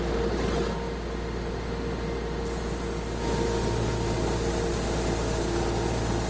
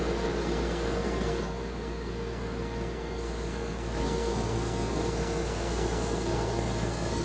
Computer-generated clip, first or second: second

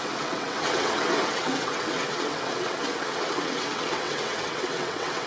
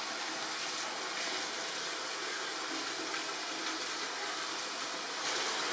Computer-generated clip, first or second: first